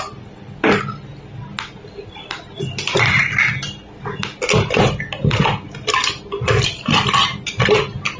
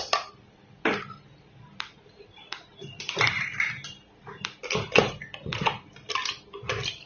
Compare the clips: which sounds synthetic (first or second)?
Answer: second